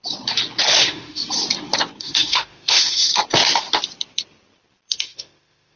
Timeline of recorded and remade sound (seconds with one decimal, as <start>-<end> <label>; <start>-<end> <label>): 0.0-0.7 recorded; 0.7-1.2 remade; 1.2-2.0 recorded; 2.0-3.1 remade; 3.1-4.9 recorded; 4.9-5.8 remade